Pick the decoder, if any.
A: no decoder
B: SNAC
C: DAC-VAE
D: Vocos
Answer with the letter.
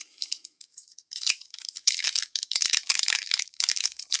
C